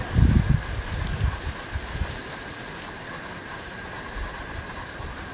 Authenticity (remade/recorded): recorded